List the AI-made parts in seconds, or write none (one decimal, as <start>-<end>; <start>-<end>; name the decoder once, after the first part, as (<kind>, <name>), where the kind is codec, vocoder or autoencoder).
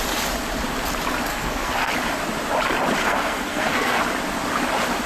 1.3-1.9 (codec, SNAC); 3.0-4.0